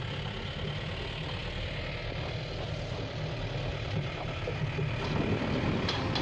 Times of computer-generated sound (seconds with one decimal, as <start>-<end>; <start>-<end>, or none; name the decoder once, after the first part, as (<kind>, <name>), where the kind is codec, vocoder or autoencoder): 3.7-4.6 (vocoder, BigVGAN v2)